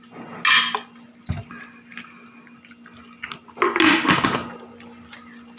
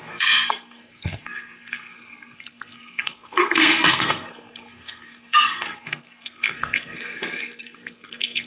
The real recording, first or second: first